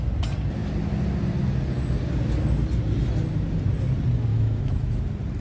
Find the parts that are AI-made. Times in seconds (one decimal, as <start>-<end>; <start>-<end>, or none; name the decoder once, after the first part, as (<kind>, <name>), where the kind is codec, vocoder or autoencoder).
4.3-5.0 (autoencoder, DAC-VAE)